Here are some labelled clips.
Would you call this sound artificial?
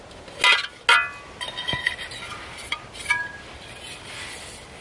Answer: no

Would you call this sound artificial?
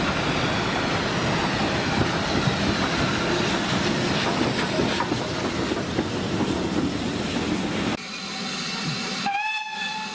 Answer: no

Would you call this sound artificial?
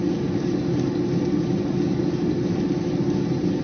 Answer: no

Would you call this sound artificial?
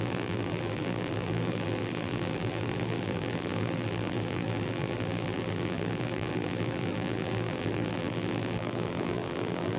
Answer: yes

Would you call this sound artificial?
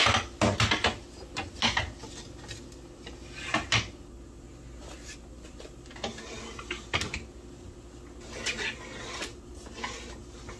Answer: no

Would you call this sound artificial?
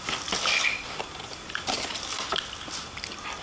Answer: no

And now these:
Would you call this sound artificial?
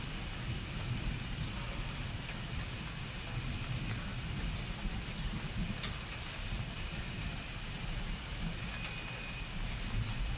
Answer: no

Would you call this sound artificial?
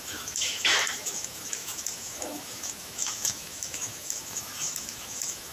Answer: yes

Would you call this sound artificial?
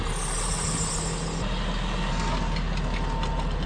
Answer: no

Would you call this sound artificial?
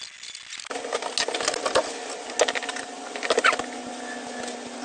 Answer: no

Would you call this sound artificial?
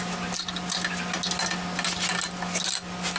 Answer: no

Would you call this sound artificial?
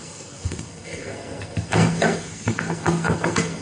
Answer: yes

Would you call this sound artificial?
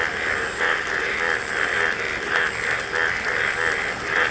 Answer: no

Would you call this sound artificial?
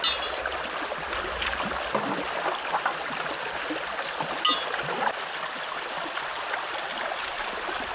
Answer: no